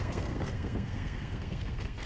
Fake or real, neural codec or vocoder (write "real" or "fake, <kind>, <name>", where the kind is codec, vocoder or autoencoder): fake, codec, SNAC